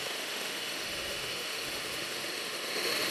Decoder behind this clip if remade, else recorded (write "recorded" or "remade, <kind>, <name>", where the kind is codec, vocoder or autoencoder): remade, autoencoder, DAC-VAE